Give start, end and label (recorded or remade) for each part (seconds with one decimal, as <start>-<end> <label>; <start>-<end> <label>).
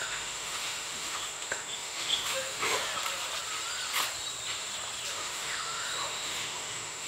0.0-2.9 remade; 2.9-5.1 recorded; 5.1-7.1 remade